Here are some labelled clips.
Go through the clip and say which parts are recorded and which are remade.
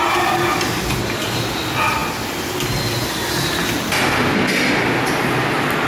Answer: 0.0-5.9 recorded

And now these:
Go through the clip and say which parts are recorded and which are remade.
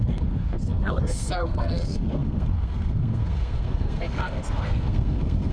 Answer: 0.0-5.5 remade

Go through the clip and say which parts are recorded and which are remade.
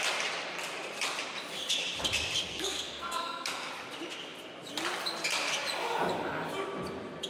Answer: 0.0-2.5 recorded; 2.5-3.7 remade; 3.7-7.3 recorded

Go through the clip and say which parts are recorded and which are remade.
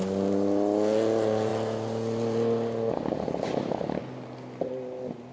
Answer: 0.0-5.3 recorded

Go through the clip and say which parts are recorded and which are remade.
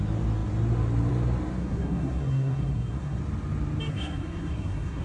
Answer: 0.0-1.6 recorded; 1.6-3.2 remade; 3.2-3.9 recorded; 3.9-5.0 remade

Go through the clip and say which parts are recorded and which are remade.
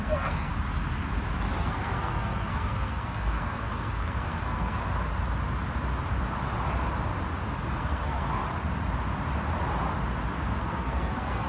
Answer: 0.0-0.5 remade; 0.5-1.6 recorded; 1.6-4.8 remade; 4.8-7.7 recorded; 7.7-8.4 remade; 8.4-10.6 recorded; 10.6-11.5 remade